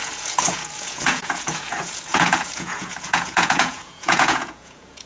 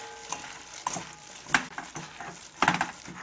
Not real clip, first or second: first